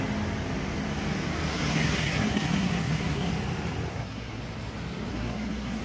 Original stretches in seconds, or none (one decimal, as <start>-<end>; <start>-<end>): 0.0-1.5; 3.3-3.9; 4.4-5.1